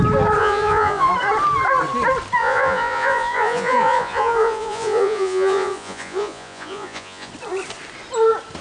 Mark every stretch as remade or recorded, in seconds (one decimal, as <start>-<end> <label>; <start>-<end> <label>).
0.0-0.4 recorded; 0.4-1.1 remade; 1.1-2.4 recorded; 2.4-7.3 remade; 7.3-8.6 recorded